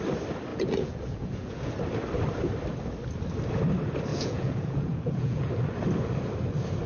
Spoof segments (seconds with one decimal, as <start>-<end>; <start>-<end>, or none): 0.5-1.7; 4.1-5.5